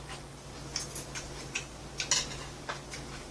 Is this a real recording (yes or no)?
yes